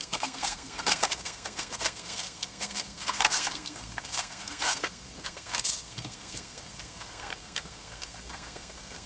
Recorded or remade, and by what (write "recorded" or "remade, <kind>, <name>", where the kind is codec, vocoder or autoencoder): remade, codec, SNAC